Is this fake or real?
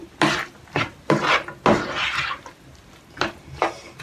real